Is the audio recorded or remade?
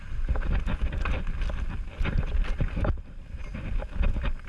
recorded